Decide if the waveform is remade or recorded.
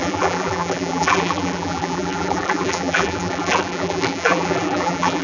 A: remade